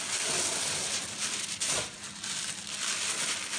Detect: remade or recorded recorded